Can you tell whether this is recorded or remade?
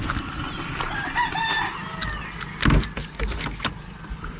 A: recorded